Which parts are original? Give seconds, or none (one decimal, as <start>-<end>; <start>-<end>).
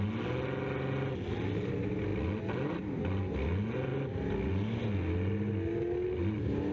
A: 0.0-6.7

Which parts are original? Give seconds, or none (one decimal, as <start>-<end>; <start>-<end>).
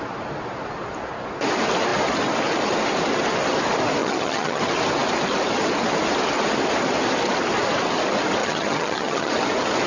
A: 0.0-4.0; 4.6-8.4; 9.3-9.9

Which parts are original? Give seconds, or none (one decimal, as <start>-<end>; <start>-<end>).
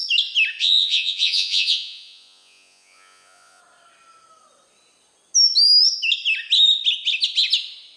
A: 0.0-0.6; 3.6-8.0